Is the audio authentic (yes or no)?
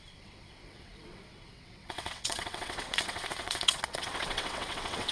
no